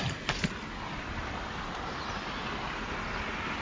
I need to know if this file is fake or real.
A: real